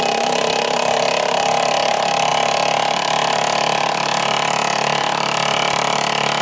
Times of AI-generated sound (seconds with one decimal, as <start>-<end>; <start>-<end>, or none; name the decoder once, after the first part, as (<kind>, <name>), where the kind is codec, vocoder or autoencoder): 0.0-6.4 (vocoder, BigVGAN v2)